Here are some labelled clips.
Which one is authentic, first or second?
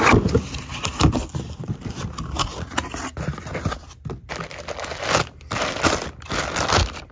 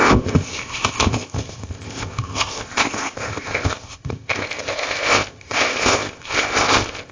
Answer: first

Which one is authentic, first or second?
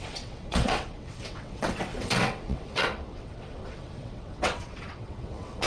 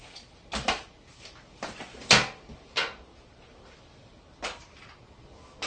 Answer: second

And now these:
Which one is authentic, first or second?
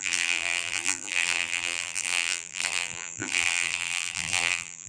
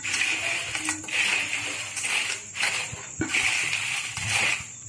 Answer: second